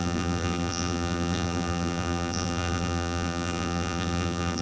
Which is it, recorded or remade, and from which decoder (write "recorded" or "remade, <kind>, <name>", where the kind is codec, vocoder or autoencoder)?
remade, vocoder, BigVGAN v2